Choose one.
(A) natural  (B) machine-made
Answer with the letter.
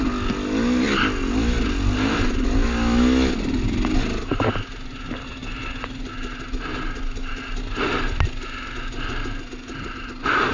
A